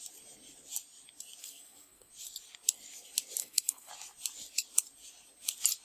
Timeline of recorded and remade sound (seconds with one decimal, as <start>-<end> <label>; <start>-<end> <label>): 0.0-1.4 recorded; 1.4-2.1 remade; 2.1-3.4 recorded; 3.4-3.9 remade; 3.9-5.8 recorded